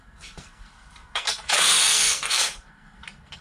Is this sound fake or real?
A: fake